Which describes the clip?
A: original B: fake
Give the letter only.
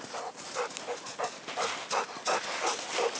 A